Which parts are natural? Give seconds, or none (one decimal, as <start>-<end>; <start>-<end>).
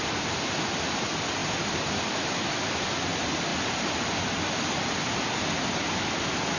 0.0-6.6